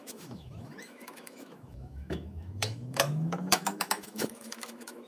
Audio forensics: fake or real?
fake